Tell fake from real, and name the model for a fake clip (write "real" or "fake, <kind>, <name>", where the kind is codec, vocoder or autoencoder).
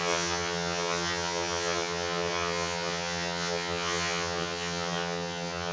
fake, vocoder, HiFi-GAN